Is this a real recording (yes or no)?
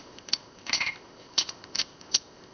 no